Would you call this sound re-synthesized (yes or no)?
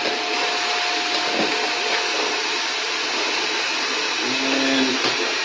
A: no